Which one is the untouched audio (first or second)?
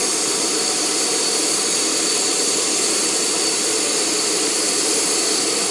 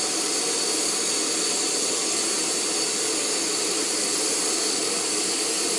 second